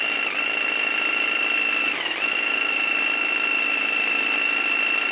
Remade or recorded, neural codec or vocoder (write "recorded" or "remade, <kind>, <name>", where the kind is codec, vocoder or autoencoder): recorded